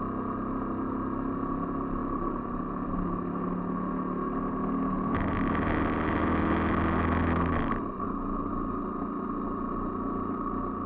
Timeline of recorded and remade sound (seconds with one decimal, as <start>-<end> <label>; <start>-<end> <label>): 0.0-10.9 recorded